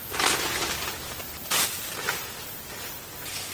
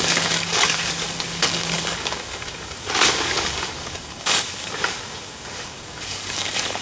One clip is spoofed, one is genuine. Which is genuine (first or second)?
first